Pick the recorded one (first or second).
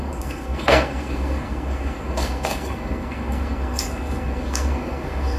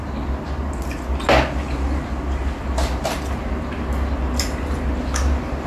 second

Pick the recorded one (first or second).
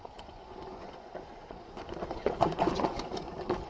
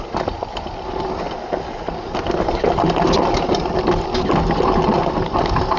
second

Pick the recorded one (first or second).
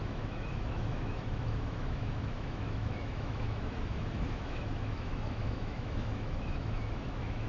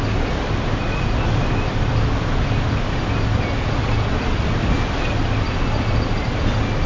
second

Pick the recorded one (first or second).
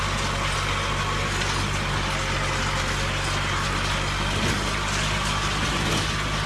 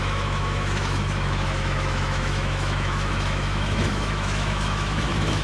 first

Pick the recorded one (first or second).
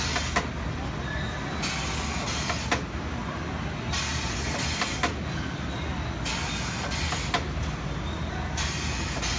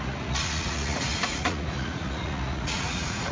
first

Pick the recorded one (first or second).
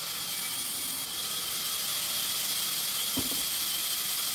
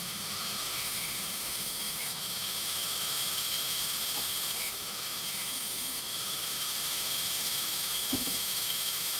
first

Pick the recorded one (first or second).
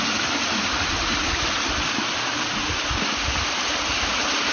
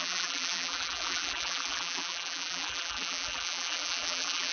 first